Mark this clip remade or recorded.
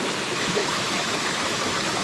remade